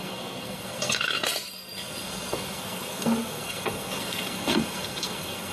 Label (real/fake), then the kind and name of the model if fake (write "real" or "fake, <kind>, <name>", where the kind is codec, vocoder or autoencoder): fake, codec, SNAC